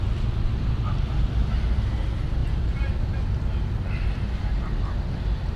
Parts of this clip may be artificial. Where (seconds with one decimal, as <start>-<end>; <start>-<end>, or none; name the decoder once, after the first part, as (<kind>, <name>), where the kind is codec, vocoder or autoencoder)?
none